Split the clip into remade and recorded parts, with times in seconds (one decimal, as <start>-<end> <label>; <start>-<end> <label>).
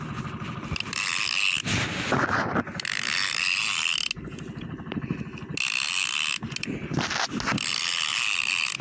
0.0-8.8 recorded